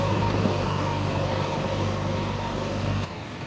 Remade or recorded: remade